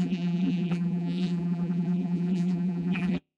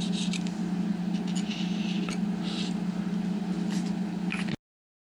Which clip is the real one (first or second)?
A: second